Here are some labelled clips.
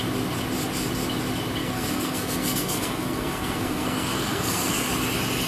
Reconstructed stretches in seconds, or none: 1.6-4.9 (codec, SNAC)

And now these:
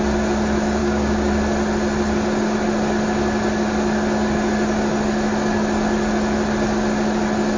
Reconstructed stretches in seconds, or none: 0.8-1.3 (codec, DAC)

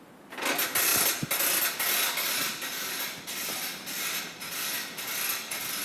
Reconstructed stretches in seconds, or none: none

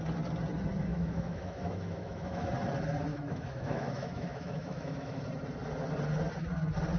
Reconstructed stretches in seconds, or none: 0.9-2.5 (autoencoder, DAC-VAE); 3.1-5.2